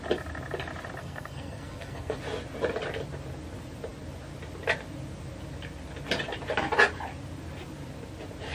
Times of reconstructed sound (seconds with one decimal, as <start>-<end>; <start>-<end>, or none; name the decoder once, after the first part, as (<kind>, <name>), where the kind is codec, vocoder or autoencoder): 1.0-2.2 (codec, SNAC)